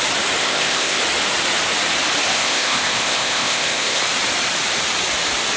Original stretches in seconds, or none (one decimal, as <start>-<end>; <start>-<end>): 0.0-0.4; 1.0-2.3; 4.0-5.6